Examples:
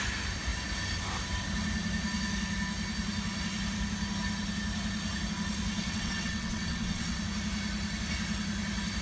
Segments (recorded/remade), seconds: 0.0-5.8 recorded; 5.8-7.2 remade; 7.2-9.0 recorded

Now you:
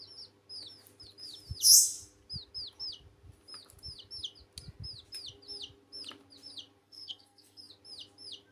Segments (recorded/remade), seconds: 0.0-6.8 recorded; 6.8-7.7 remade; 7.7-8.5 recorded

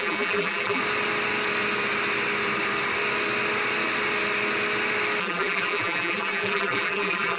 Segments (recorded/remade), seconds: 0.0-0.8 remade; 0.8-5.2 recorded; 5.2-7.4 remade

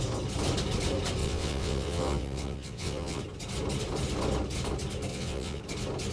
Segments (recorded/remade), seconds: 0.0-1.2 recorded; 1.2-3.2 remade; 3.2-5.1 recorded; 5.1-5.6 remade; 5.6-6.1 recorded

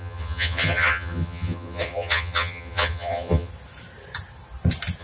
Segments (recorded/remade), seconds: 0.0-3.5 remade; 3.5-5.0 recorded